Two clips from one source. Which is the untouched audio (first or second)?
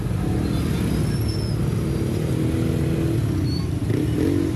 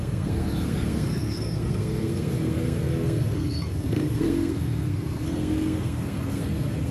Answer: first